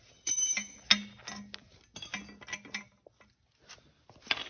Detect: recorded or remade recorded